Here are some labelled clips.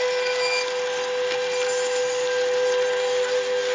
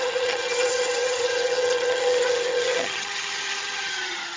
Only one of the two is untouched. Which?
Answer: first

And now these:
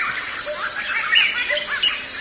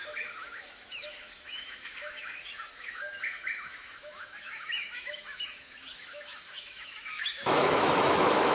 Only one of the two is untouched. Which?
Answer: first